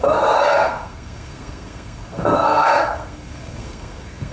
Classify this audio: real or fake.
fake